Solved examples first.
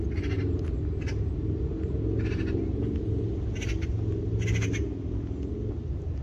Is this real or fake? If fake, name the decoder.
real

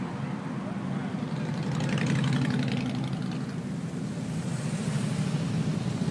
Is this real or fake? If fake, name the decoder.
real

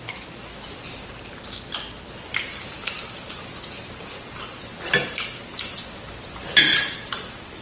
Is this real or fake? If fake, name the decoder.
real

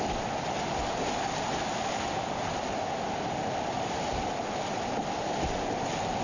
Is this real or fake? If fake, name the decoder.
real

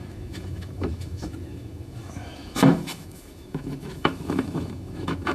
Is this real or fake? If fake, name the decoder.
fake, autoencoder, DAC-VAE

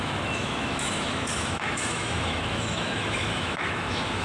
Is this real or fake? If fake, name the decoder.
fake, autoencoder, DAC-VAE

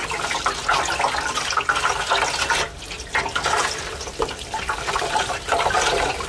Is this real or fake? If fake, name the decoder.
real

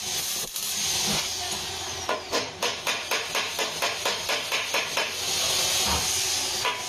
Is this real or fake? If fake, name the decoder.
real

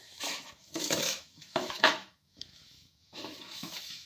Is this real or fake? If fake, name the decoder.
fake, autoencoder, DAC-VAE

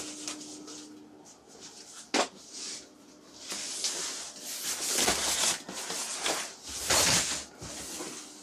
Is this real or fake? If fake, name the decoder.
real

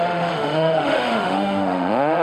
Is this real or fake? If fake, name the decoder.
fake, autoencoder, DAC-VAE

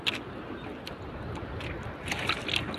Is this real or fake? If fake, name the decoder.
real